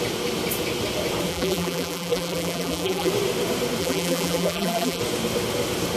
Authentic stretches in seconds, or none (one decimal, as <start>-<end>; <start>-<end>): 0.0-1.3; 3.1-3.8; 5.0-6.0